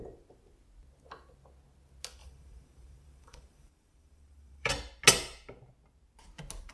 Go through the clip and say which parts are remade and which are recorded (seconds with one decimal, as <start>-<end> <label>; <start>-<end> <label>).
0.0-2.2 recorded; 2.2-4.7 remade; 4.7-6.7 recorded